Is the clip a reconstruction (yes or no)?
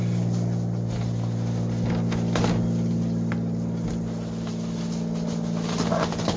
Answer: no